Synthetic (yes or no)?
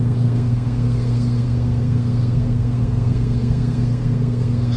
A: yes